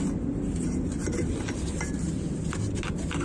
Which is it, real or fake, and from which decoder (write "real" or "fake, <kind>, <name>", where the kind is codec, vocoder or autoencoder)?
real